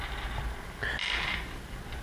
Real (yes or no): yes